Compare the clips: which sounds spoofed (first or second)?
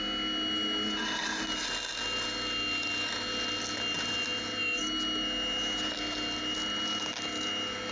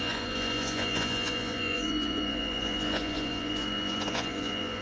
second